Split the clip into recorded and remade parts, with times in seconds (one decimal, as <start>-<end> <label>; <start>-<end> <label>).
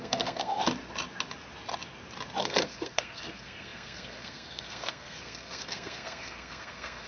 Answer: 0.0-0.6 remade; 0.6-2.4 recorded; 2.4-7.1 remade